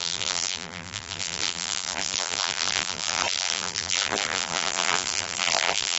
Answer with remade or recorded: remade